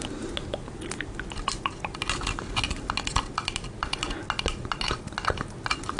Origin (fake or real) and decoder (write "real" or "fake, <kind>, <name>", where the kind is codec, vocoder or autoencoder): real